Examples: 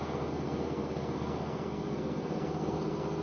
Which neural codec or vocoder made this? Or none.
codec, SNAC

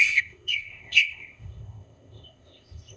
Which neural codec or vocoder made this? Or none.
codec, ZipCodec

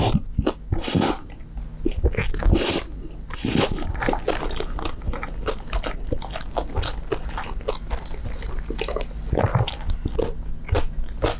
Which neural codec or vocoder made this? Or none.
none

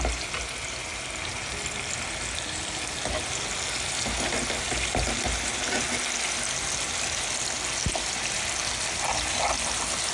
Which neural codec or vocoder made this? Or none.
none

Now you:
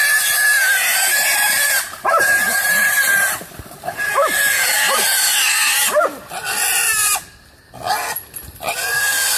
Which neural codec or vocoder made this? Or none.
none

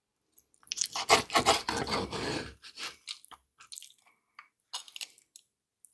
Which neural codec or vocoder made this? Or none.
none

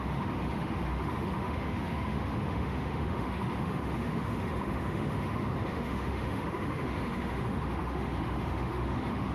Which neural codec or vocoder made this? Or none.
autoencoder, DAC-VAE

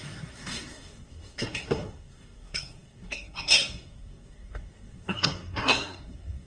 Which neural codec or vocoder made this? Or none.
codec, SNAC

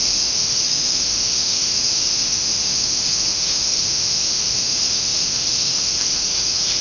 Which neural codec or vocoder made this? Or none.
autoencoder, DAC-VAE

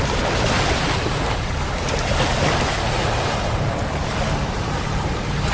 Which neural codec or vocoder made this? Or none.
none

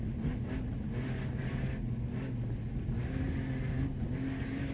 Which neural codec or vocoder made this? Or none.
none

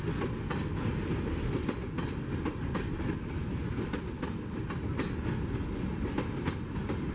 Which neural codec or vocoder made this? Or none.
none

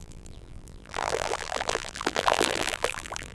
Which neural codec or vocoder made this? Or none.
vocoder, BigVGAN v2